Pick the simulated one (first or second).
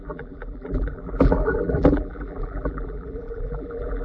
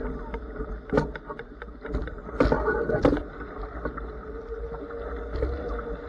first